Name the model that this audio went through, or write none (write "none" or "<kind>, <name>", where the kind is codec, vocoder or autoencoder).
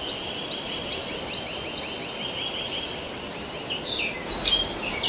none